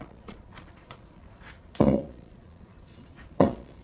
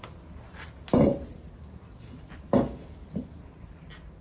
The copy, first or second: first